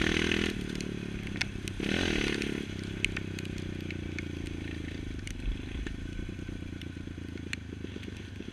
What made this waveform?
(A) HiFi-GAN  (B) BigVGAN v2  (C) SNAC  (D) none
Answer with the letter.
D